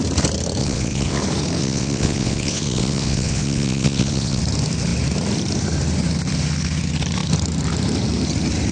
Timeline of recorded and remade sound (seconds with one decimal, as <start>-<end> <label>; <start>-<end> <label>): 0.0-0.6 recorded; 0.6-1.2 remade; 1.2-1.6 recorded; 1.6-4.4 remade; 4.4-8.7 recorded